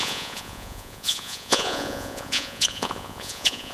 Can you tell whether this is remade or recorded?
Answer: remade